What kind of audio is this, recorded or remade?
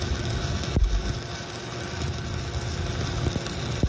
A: recorded